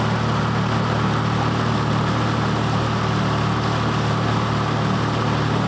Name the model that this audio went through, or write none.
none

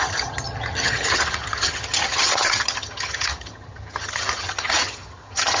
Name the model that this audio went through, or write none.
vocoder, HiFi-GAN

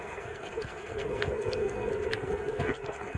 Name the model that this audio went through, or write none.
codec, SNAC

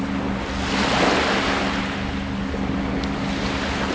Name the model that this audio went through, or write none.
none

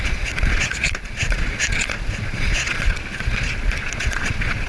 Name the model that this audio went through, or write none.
vocoder, Vocos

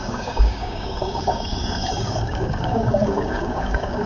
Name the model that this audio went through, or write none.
codec, DAC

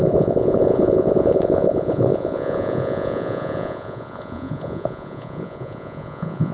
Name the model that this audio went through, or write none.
vocoder, Vocos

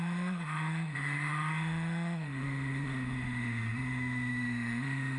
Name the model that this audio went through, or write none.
autoencoder, DAC-VAE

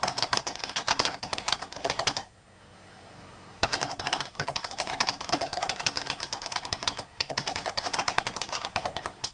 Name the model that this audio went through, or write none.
codec, SNAC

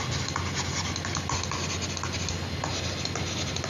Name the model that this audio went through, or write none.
none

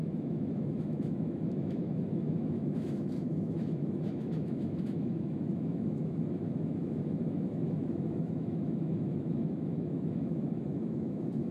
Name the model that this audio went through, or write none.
autoencoder, DAC-VAE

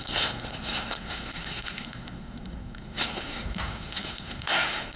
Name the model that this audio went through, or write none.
codec, SNAC